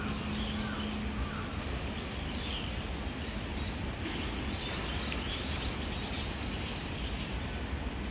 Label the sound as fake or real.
real